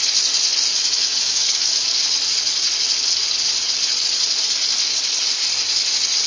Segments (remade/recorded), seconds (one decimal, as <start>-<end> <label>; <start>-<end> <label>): 0.0-0.7 recorded; 0.7-1.9 remade; 1.9-6.3 recorded